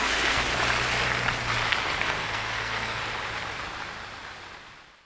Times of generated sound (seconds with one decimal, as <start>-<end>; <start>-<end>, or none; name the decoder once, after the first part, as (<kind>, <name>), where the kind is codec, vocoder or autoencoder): 0.0-0.4 (codec, SNAC); 2.0-3.0